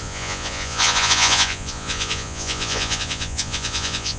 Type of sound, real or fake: fake